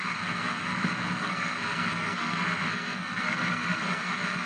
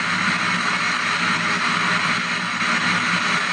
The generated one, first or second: first